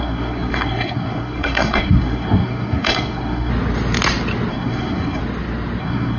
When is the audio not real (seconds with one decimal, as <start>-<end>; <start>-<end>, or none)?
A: 0.0-3.5; 4.5-5.2; 5.8-6.2